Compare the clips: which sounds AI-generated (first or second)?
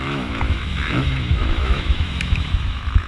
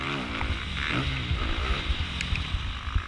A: first